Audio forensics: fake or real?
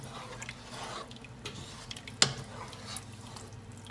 real